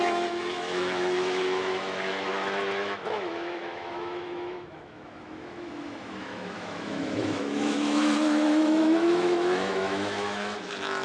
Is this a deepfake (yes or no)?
yes